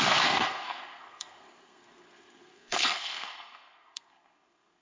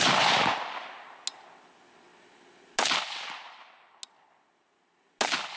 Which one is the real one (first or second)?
second